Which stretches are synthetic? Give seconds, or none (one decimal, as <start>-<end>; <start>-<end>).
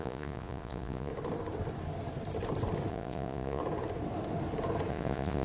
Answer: 0.0-1.1; 2.9-3.6; 4.9-5.4